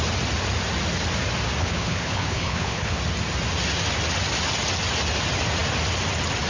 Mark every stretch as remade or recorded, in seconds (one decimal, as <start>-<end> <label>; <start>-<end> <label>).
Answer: 0.0-1.6 recorded; 1.6-3.0 remade; 3.0-6.5 recorded

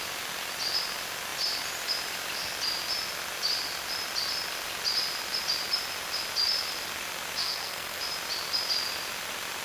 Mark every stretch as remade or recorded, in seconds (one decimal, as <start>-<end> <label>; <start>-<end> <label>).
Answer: 0.0-7.4 recorded; 7.4-8.0 remade; 8.0-9.6 recorded

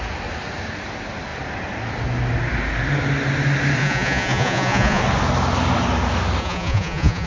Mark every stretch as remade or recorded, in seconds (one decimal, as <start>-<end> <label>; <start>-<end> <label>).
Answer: 0.0-3.8 recorded; 3.8-5.0 remade; 5.0-6.4 recorded; 6.4-7.3 remade

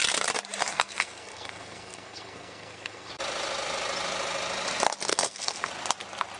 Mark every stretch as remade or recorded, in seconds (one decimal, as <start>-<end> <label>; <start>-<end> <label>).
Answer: 0.0-0.7 recorded; 0.7-3.1 remade; 3.1-5.1 recorded; 5.1-5.7 remade; 5.7-6.4 recorded

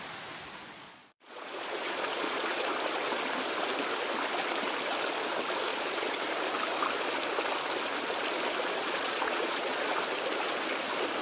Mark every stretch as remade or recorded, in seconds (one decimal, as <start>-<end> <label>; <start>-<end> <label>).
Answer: 0.0-0.7 recorded; 0.7-2.7 remade; 2.7-5.7 recorded; 5.7-6.2 remade; 6.2-8.8 recorded; 8.8-9.9 remade; 9.9-11.2 recorded

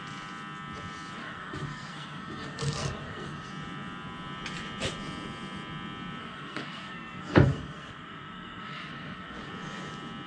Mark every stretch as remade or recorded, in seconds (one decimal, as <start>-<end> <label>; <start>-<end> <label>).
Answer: 0.0-1.2 recorded; 1.2-3.5 remade; 3.5-6.2 recorded; 6.2-9.5 remade; 9.5-10.3 recorded

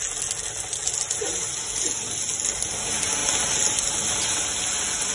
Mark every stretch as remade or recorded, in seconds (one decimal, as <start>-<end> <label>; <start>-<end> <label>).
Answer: 0.0-5.1 recorded

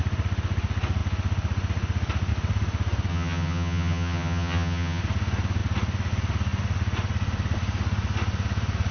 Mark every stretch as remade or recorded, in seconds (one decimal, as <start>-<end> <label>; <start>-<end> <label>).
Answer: 0.0-3.1 recorded; 3.1-5.0 remade; 5.0-8.9 recorded